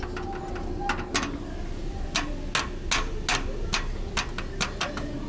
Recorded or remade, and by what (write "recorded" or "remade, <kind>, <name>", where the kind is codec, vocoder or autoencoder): recorded